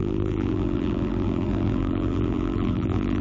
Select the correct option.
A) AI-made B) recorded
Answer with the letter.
A